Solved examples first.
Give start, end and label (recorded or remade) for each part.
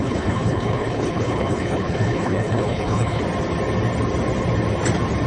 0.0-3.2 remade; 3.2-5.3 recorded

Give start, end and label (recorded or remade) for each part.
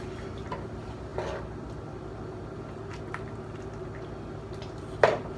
0.0-5.4 recorded